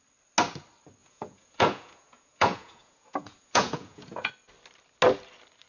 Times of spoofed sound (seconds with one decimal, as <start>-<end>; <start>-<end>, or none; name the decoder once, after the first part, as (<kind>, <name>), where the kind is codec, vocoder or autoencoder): 1.0-4.3 (vocoder, Vocos)